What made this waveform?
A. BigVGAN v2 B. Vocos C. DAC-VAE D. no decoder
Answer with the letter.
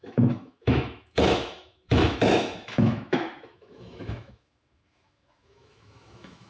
C